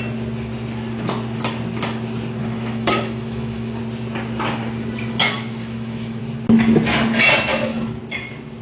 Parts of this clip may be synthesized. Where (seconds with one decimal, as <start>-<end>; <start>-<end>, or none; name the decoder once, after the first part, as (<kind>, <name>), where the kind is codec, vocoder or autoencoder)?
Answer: 2.4-3.8 (autoencoder, DAC-VAE); 5.2-6.2; 7.5-8.0